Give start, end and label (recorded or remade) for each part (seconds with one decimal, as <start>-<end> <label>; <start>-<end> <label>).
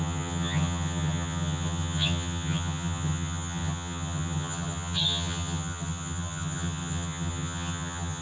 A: 0.0-8.2 remade